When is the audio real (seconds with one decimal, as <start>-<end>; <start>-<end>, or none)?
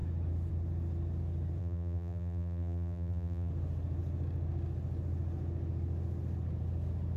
0.0-1.6; 3.5-7.2